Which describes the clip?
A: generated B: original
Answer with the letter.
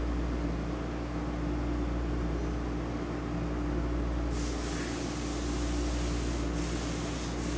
B